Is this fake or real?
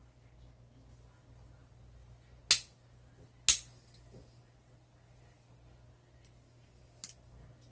real